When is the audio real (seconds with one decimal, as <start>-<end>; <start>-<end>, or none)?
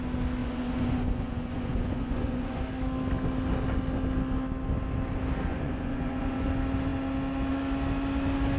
0.0-0.4; 2.6-5.5; 6.5-8.6